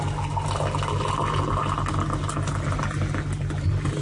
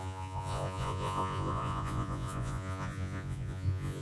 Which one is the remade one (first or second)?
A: second